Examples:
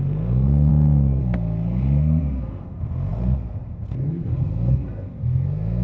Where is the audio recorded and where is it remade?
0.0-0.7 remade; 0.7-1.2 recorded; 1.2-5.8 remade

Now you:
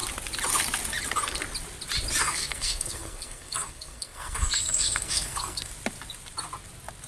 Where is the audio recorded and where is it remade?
0.0-2.2 recorded; 2.2-5.7 remade; 5.7-7.1 recorded